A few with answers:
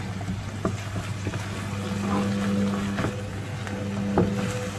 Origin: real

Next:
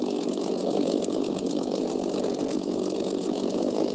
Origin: fake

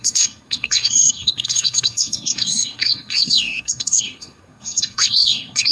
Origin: fake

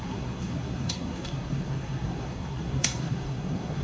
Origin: fake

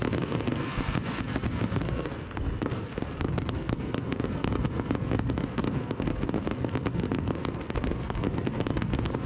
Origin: fake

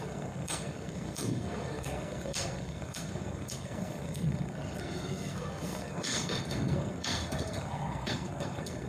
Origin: fake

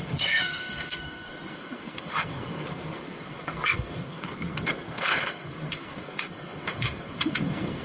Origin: fake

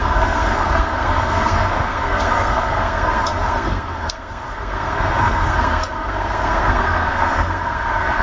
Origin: fake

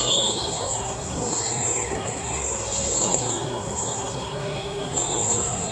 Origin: fake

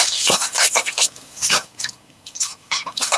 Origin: fake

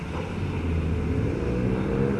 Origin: real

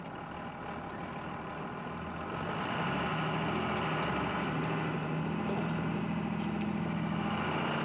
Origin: real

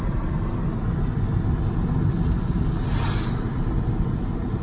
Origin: real